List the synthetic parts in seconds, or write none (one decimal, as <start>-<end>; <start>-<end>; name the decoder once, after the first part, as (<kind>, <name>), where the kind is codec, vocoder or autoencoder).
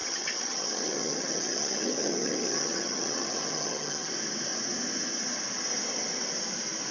0.0-4.1 (vocoder, HiFi-GAN)